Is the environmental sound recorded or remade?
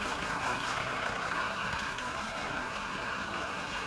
remade